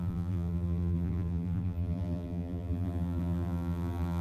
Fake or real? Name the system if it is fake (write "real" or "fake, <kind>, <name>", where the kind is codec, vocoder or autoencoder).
fake, vocoder, BigVGAN v2